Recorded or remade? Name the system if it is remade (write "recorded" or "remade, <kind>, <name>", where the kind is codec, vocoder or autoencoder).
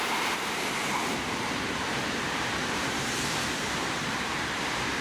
remade, vocoder, BigVGAN v2